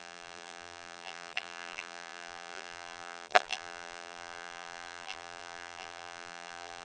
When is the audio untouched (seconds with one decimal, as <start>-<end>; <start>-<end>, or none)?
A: none